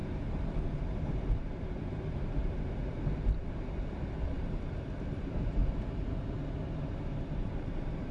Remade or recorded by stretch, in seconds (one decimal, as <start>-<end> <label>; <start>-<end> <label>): 0.0-0.7 recorded; 0.7-5.6 remade; 5.6-6.8 recorded; 6.8-8.1 remade